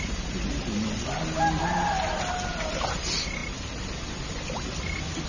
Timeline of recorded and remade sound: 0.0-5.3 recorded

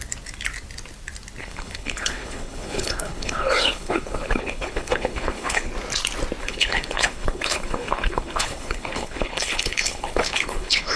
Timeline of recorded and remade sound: 0.0-1.4 recorded; 1.4-5.7 remade; 5.7-6.4 recorded; 6.4-11.0 remade